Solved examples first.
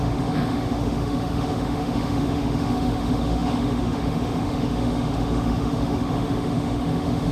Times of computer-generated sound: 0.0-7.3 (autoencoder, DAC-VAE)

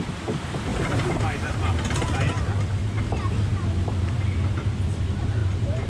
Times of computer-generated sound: 0.7-1.5 (vocoder, BigVGAN v2); 5.4-5.9

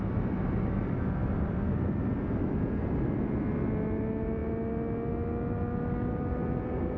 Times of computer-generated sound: none

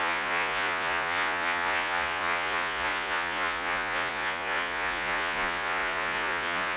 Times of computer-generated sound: 0.0-6.8 (vocoder, Vocos)

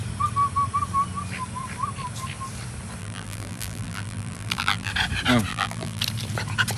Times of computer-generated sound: 3.0-4.9 (vocoder, BigVGAN v2); 5.5-6.0

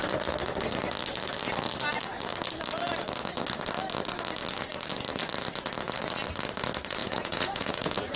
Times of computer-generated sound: 7.0-8.2 (vocoder, Vocos)

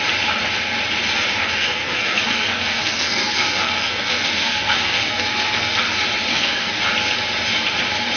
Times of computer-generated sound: 1.4-5.8 (codec, SNAC); 6.3-6.8